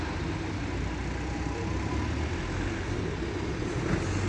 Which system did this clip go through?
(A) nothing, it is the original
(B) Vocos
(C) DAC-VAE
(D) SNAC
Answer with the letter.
A